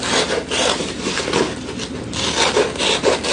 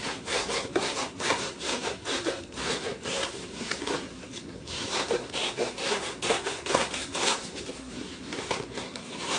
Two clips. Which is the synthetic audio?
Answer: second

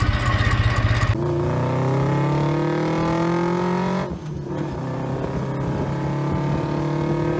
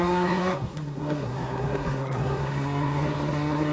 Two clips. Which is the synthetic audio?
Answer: second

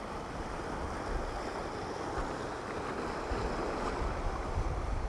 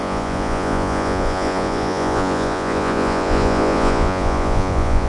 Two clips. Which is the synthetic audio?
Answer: second